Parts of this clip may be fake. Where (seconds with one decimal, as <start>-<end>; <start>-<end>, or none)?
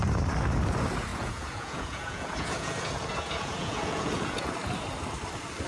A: 1.1-4.5